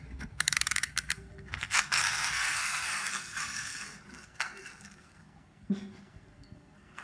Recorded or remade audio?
remade